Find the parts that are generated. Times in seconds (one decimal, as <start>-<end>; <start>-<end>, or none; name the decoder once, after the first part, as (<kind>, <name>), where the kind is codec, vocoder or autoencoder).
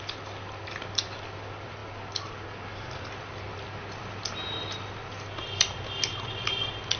none